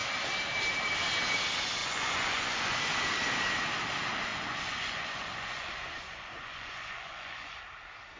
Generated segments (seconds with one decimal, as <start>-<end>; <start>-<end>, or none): 1.8-2.8; 4.3-7.6